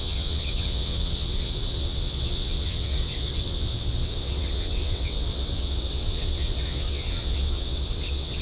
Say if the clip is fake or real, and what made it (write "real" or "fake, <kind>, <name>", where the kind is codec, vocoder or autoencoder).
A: fake, vocoder, WaveNeXt